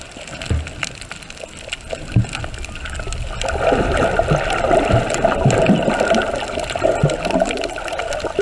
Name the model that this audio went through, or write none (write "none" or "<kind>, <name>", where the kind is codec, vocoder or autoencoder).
none